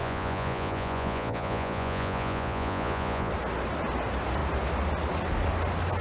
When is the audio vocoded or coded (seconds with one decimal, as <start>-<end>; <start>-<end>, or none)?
0.0-3.3